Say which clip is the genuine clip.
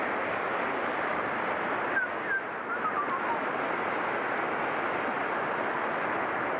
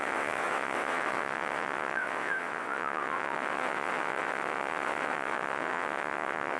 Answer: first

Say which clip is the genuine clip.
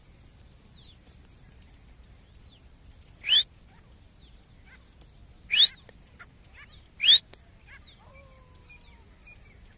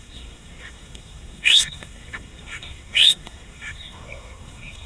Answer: first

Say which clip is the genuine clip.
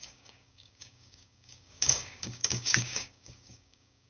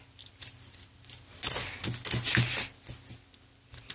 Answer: second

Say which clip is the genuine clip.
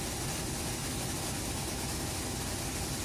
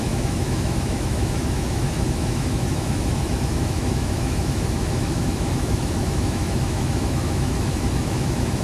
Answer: first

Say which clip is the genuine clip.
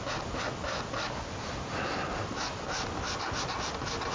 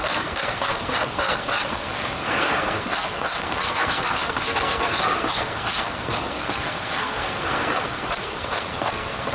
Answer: first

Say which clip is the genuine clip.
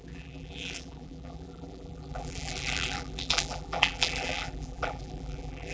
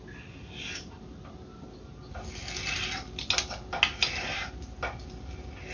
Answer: second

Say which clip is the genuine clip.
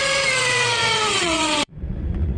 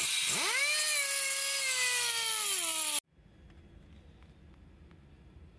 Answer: second